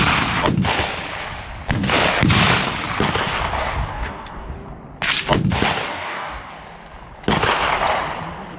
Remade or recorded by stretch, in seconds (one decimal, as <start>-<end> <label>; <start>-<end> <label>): 0.0-3.9 recorded; 3.9-4.5 remade; 4.5-5.9 recorded; 5.9-6.5 remade; 6.5-8.6 recorded

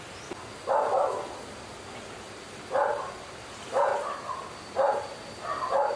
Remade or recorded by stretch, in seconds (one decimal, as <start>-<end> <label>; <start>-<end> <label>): 0.0-6.0 recorded

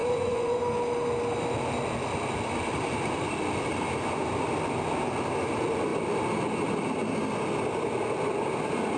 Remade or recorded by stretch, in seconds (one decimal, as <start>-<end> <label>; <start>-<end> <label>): 0.0-0.6 remade; 0.6-9.0 recorded

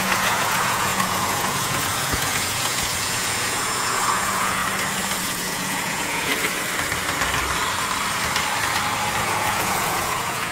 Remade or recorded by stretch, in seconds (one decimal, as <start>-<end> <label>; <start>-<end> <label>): 0.0-4.6 remade; 4.6-5.2 recorded; 5.2-6.3 remade; 6.3-9.2 recorded; 9.2-10.5 remade

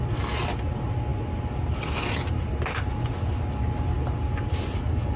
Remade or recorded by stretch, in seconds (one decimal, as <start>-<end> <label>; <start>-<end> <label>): 0.0-5.2 recorded